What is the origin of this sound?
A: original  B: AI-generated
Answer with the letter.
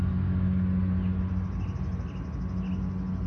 A